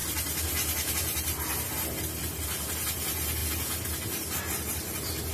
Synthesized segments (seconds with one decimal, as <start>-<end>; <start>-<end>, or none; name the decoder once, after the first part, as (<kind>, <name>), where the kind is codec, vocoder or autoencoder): none